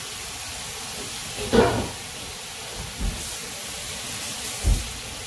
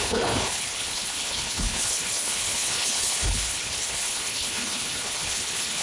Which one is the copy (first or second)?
second